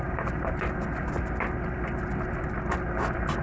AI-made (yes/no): no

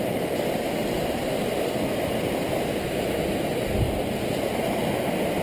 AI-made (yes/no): no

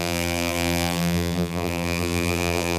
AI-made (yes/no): yes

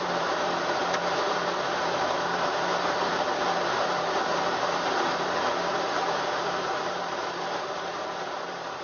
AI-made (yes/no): yes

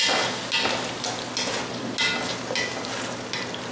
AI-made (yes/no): no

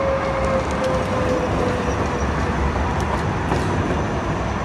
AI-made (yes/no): no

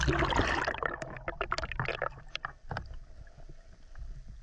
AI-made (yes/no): no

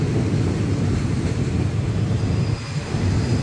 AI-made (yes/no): no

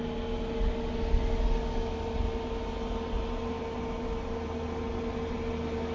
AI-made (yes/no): no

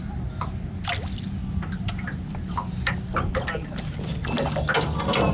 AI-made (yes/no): no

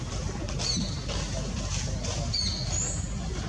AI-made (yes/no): no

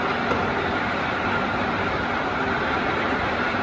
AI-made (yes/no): no